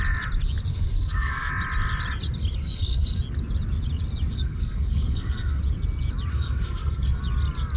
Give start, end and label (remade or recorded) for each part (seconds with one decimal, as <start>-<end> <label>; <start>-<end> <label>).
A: 0.0-0.7 recorded; 0.7-1.5 remade; 1.5-2.6 recorded; 2.6-3.2 remade; 3.2-4.3 recorded; 4.3-5.6 remade; 5.6-6.3 recorded; 6.3-7.2 remade; 7.2-7.8 recorded